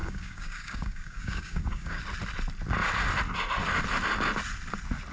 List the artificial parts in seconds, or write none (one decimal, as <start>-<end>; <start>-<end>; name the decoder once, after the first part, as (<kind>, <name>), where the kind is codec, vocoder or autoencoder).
0.0-2.0 (codec, DAC)